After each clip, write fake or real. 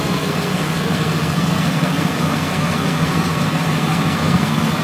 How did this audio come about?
fake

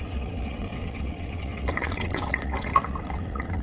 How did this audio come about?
fake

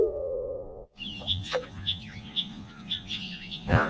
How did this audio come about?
fake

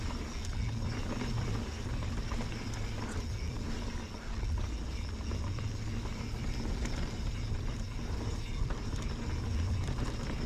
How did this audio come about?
real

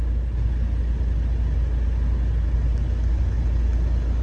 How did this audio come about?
real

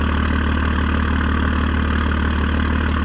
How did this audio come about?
real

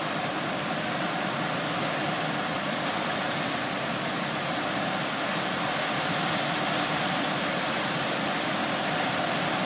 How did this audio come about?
real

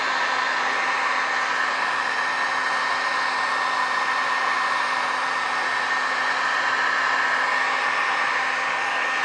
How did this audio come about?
real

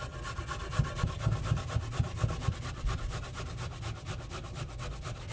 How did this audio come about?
real